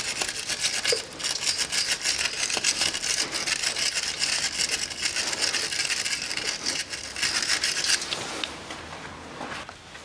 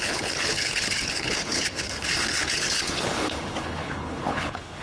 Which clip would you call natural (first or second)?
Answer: first